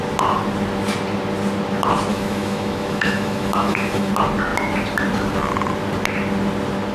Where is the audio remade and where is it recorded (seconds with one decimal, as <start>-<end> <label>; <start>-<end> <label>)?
0.0-2.1 recorded; 2.1-4.1 remade; 4.1-6.9 recorded